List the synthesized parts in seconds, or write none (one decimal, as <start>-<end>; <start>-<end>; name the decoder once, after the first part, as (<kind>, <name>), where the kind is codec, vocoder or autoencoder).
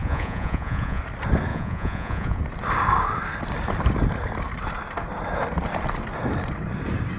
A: 0.0-1.0 (vocoder, Vocos); 1.5-2.4